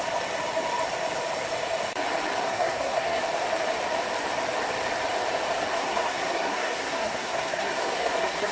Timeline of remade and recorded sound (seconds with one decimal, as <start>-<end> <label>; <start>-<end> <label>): 0.0-2.4 recorded; 2.4-3.2 remade; 3.2-5.8 recorded; 5.8-8.5 remade